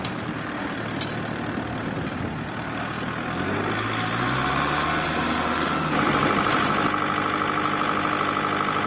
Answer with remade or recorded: recorded